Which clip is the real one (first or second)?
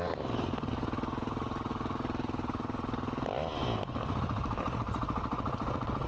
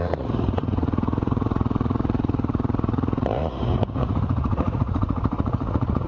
first